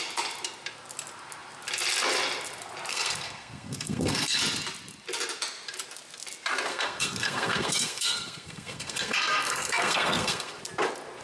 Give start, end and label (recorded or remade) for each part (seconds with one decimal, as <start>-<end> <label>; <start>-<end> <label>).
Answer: 0.0-2.9 recorded; 2.9-4.4 remade; 4.4-6.7 recorded; 6.7-10.6 remade; 10.6-11.2 recorded